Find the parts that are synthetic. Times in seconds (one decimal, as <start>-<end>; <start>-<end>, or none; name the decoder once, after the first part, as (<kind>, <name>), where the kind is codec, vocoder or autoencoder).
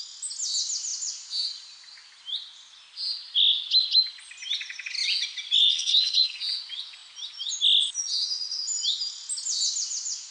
5.6-6.4 (codec, SNAC)